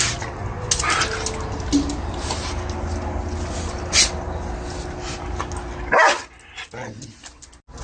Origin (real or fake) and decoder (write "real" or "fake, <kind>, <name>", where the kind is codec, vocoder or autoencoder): real